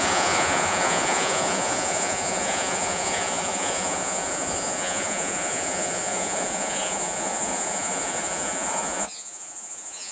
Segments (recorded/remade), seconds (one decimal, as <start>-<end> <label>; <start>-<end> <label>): 0.0-10.1 remade